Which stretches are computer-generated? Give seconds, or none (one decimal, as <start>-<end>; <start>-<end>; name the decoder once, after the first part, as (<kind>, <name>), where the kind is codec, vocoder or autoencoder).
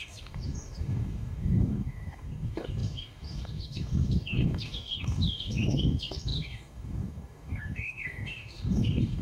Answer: 0.0-9.2 (codec, DAC)